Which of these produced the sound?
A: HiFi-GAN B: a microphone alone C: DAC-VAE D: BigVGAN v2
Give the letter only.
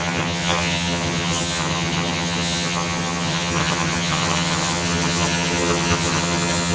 A